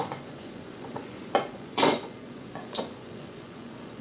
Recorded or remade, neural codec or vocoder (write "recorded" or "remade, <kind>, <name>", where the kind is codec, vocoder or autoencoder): remade, vocoder, Vocos